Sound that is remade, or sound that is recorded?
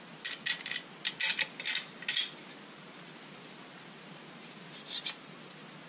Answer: recorded